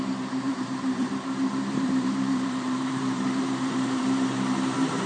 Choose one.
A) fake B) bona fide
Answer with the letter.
A